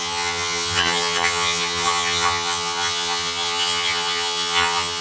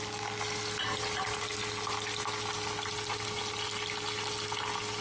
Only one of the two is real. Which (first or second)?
second